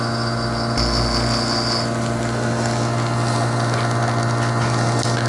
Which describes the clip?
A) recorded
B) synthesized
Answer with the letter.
A